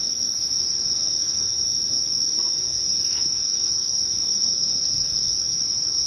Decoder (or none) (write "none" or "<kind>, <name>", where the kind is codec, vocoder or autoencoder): codec, SNAC